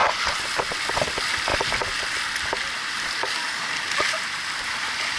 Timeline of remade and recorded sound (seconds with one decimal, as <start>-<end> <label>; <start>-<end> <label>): 0.0-3.2 recorded; 3.2-3.7 remade; 3.7-5.2 recorded